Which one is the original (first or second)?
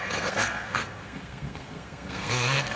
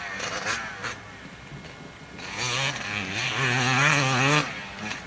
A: second